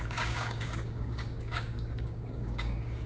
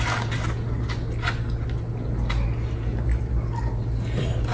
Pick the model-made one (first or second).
first